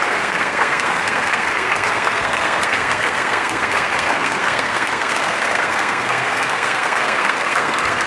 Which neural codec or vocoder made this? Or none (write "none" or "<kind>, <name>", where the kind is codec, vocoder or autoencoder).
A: codec, SNAC